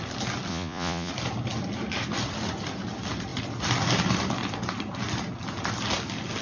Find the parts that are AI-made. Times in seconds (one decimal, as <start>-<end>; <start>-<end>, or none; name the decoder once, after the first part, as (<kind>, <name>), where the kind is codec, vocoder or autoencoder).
0.5-1.1 (vocoder, Vocos)